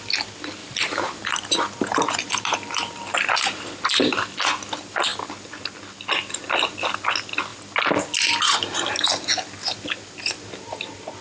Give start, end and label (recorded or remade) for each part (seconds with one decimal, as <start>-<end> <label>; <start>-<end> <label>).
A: 0.0-0.6 recorded; 0.6-3.8 remade; 3.8-11.2 recorded